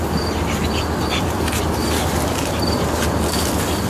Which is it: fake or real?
real